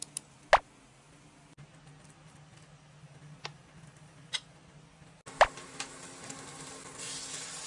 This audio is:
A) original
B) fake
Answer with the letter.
A